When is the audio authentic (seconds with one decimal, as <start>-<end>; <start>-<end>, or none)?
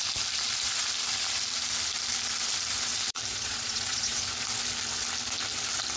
0.0-3.3; 4.2-6.0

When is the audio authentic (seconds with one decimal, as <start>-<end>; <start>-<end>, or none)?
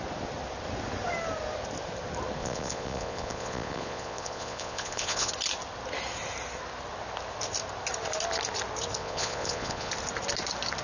0.0-2.4; 5.3-9.0; 9.9-10.8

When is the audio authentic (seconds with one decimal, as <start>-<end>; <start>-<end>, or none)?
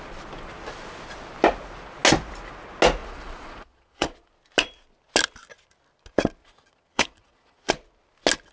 0.0-3.0; 4.3-6.4; 7.7-8.5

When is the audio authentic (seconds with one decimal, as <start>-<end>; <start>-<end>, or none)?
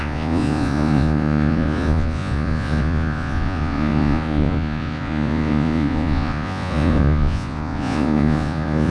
none